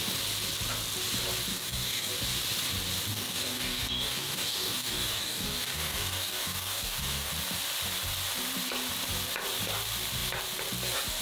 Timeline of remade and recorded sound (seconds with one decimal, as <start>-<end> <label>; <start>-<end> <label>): 0.0-1.5 recorded; 1.5-2.1 remade; 2.1-3.1 recorded; 3.1-7.3 remade; 7.3-11.2 recorded